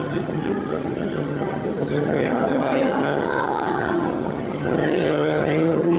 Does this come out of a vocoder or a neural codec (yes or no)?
yes